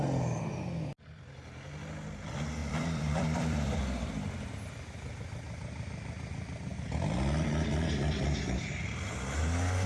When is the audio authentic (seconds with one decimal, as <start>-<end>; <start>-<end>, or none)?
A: 0.0-2.6; 3.8-9.9